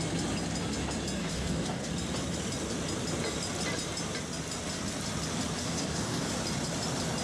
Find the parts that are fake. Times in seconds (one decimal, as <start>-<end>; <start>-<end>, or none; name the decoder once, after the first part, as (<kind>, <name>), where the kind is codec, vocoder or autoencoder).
1.2-1.9 (codec, DAC); 5.6-6.3

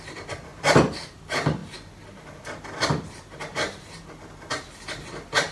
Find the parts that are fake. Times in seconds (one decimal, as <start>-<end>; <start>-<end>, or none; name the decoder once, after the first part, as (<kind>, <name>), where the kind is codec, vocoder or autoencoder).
none